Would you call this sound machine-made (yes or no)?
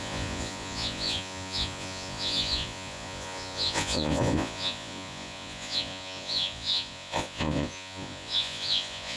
yes